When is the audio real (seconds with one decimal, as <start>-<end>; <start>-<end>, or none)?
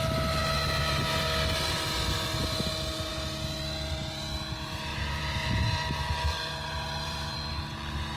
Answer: 0.0-4.9; 7.5-8.2